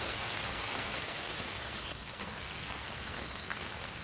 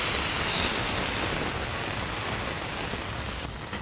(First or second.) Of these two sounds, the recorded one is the second